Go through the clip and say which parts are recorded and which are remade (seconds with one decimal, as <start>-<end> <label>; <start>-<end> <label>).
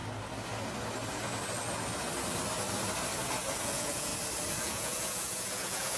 0.0-3.6 recorded; 3.6-4.1 remade; 4.1-4.6 recorded; 4.6-6.0 remade